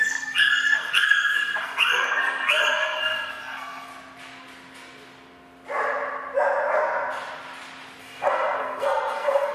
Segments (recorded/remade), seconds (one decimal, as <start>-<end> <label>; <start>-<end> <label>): 0.0-3.9 remade; 3.9-8.0 recorded; 8.0-9.5 remade